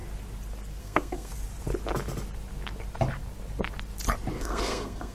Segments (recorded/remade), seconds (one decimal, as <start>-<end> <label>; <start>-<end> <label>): 0.0-0.8 recorded; 0.8-1.3 remade; 1.3-4.4 recorded; 4.4-5.1 remade